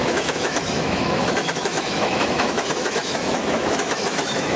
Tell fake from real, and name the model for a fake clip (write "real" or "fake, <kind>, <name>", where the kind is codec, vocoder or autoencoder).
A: fake, autoencoder, DAC-VAE